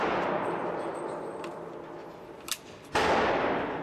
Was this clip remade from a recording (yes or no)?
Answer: no